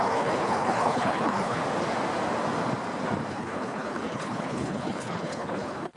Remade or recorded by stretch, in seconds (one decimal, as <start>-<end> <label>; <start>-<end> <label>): 0.0-1.6 remade; 1.6-3.3 recorded; 3.3-6.0 remade